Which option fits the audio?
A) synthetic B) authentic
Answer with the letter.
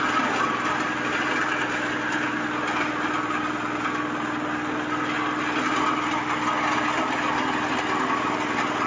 B